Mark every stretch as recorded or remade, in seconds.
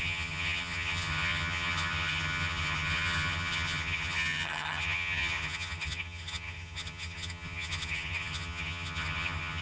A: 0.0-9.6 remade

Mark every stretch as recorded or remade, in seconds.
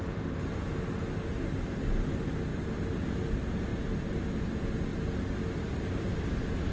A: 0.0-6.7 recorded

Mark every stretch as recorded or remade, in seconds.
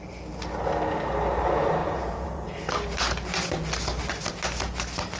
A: 0.0-1.8 recorded; 1.8-2.6 remade; 2.6-5.2 recorded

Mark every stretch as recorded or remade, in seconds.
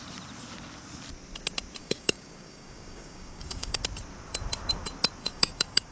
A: 0.0-1.8 recorded; 1.8-3.8 remade; 3.8-5.2 recorded; 5.2-5.9 remade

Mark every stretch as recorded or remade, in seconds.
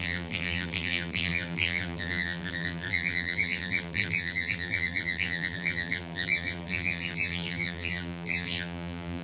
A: 0.0-9.2 remade